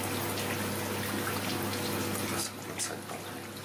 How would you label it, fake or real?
real